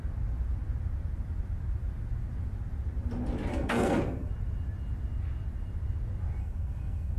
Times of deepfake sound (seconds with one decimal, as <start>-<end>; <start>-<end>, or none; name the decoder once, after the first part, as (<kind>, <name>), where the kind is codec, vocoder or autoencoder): 3.5-4.3 (codec, SNAC); 6.4-7.2